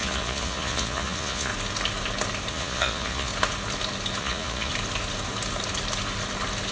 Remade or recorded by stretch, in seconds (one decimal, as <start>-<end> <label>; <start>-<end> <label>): 0.0-1.5 remade; 1.5-2.5 recorded; 2.5-3.3 remade; 3.3-4.2 recorded; 4.2-4.7 remade; 4.7-6.7 recorded